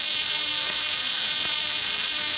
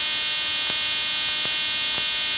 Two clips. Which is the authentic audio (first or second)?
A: second